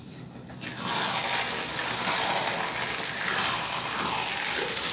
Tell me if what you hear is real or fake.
real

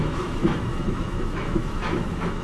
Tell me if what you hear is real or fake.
fake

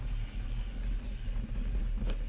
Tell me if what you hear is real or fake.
real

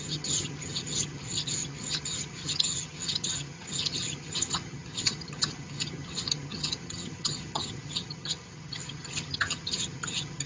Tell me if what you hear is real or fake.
fake